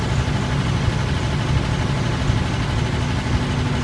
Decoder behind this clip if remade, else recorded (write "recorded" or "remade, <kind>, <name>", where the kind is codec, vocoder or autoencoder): recorded